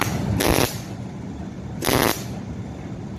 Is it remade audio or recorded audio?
remade